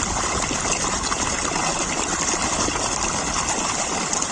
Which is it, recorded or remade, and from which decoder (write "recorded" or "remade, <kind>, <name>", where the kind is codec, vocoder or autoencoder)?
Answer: recorded